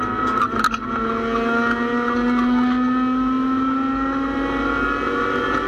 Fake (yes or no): no